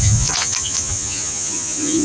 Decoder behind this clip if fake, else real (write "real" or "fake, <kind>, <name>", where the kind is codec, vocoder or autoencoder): fake, vocoder, Vocos